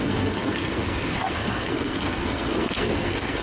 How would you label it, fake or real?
fake